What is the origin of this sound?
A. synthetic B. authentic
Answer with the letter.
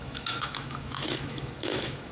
A